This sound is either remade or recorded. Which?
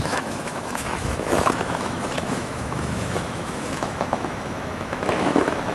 remade